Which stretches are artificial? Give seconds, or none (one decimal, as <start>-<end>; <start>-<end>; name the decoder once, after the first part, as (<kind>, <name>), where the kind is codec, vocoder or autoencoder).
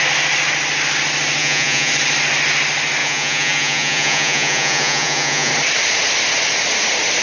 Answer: 1.4-1.9 (vocoder, Vocos); 3.0-5.5